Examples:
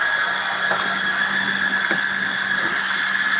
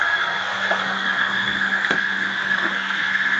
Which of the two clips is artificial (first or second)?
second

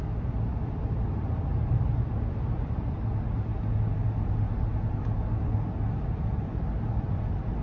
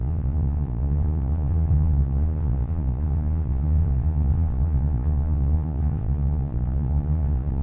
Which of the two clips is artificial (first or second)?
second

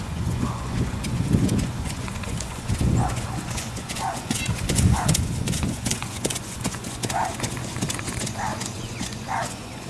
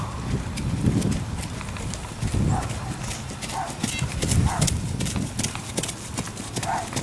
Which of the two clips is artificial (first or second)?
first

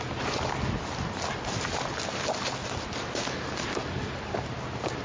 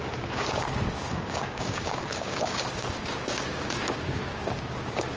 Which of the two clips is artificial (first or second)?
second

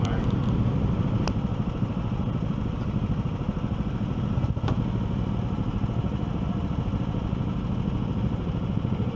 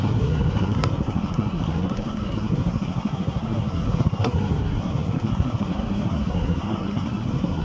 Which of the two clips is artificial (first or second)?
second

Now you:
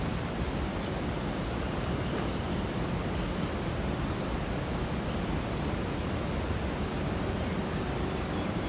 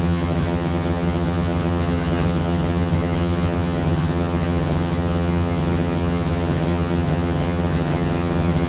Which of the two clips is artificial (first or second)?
second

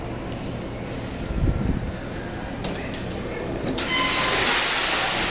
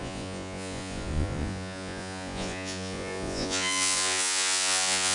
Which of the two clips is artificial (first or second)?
second